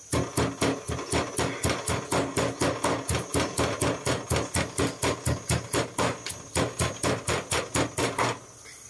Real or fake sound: real